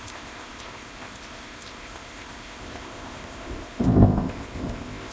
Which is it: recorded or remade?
remade